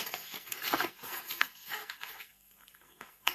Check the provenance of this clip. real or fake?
fake